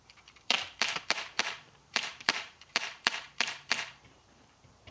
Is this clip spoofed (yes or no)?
yes